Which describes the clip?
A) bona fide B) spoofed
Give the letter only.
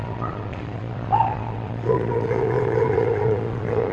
B